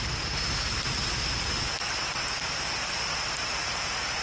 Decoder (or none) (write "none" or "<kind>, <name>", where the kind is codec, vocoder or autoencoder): none